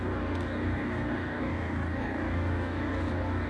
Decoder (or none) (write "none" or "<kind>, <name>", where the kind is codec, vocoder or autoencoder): codec, DAC